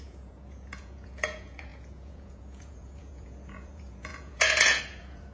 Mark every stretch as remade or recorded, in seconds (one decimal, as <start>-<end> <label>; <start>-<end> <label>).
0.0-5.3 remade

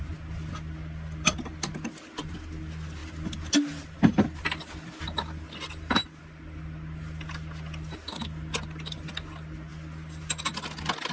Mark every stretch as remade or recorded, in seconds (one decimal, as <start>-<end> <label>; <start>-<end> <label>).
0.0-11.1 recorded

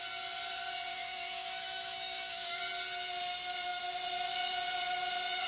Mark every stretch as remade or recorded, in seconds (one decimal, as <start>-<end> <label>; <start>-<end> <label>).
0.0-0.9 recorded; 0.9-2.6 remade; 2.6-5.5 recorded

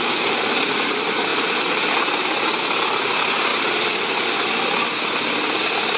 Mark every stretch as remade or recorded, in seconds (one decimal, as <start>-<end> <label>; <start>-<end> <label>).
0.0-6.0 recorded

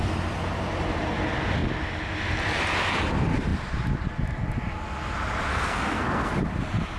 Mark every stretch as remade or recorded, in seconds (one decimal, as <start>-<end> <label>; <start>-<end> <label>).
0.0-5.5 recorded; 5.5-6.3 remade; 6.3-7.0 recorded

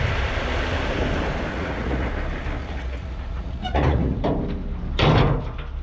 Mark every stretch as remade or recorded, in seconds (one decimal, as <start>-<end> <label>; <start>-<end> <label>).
0.0-1.5 recorded; 1.5-2.1 remade; 2.1-2.6 recorded; 2.6-4.2 remade; 4.2-5.8 recorded

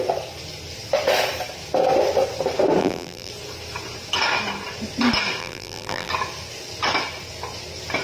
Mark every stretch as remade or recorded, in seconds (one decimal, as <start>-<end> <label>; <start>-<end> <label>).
0.0-2.8 recorded; 2.8-3.3 remade; 3.3-5.4 recorded; 5.4-6.1 remade; 6.1-8.0 recorded